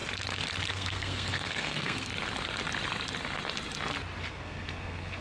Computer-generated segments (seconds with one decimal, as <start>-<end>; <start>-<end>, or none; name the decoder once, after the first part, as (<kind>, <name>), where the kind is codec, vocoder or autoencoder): 0.7-2.1 (codec, SNAC); 4.3-5.2